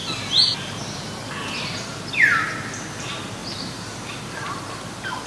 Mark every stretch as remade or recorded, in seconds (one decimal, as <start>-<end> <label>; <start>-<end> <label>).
0.0-3.4 recorded; 3.4-4.6 remade; 4.6-5.3 recorded